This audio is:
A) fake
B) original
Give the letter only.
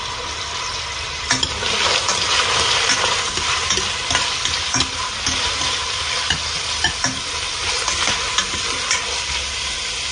B